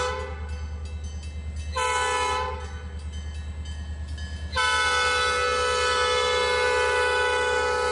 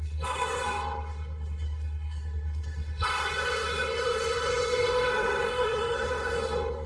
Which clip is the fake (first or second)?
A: second